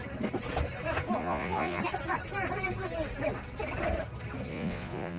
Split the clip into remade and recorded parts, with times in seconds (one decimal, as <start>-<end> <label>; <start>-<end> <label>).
0.0-1.2 recorded; 1.2-1.8 remade; 1.8-4.5 recorded; 4.5-5.2 remade